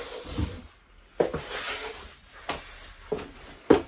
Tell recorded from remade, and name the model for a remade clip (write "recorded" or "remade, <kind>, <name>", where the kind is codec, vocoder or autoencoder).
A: recorded